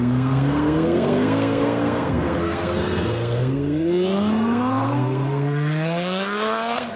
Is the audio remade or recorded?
remade